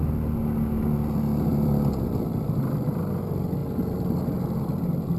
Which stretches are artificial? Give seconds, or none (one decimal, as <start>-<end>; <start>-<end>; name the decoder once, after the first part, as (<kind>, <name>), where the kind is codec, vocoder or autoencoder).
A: 1.5-3.1 (vocoder, BigVGAN v2)